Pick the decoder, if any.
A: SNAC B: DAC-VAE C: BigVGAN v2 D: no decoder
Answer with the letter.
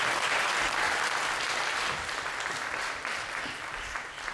C